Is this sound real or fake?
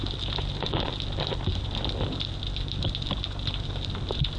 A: real